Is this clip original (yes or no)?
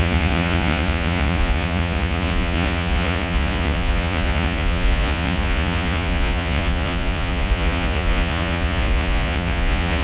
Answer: no